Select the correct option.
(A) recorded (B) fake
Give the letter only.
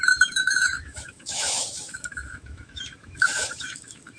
B